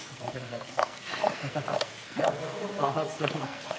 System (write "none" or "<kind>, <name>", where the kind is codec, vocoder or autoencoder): codec, SNAC